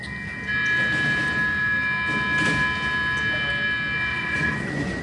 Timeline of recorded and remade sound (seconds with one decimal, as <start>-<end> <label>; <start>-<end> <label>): 0.0-4.1 recorded; 4.1-5.0 remade